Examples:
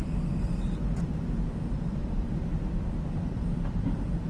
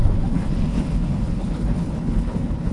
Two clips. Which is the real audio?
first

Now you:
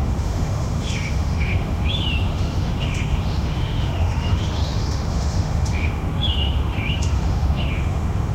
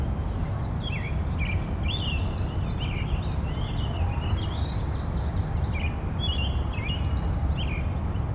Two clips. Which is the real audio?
second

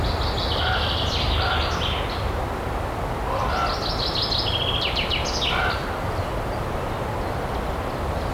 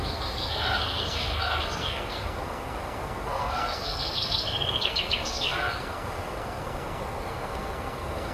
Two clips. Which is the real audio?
first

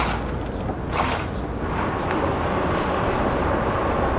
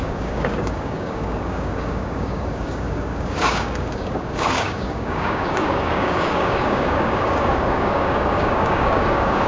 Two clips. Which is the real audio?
first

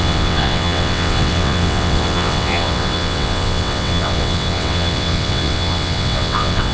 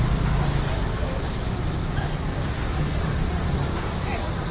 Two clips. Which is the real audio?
second